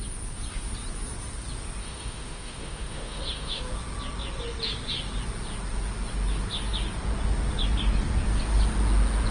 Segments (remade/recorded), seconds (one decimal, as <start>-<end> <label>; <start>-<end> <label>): 0.0-1.8 recorded; 1.8-3.6 remade; 3.6-9.3 recorded